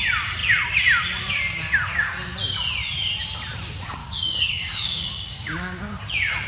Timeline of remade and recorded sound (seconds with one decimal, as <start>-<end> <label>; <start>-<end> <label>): 0.0-4.0 recorded; 4.0-5.5 remade; 5.5-6.5 recorded